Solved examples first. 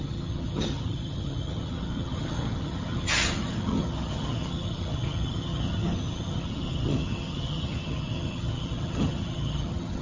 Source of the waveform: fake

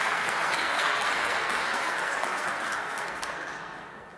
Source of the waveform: fake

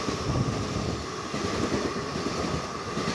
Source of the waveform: real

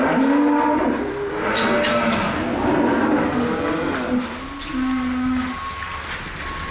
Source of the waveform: real